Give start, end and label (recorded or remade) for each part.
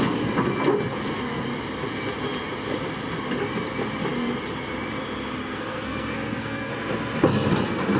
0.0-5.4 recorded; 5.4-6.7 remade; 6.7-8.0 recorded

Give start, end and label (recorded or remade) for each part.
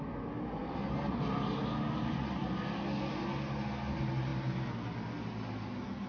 0.0-6.1 recorded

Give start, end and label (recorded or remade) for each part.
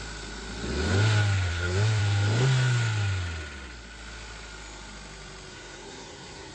0.0-1.5 recorded; 1.5-2.0 remade; 2.0-5.5 recorded; 5.5-6.5 remade